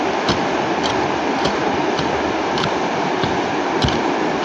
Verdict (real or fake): real